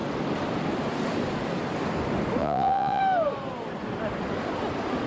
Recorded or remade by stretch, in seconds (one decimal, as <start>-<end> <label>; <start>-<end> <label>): 0.0-2.4 recorded; 2.4-3.0 remade; 3.0-5.1 recorded